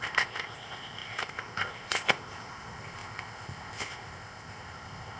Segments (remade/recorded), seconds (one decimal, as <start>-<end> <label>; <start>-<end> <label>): 0.0-5.2 remade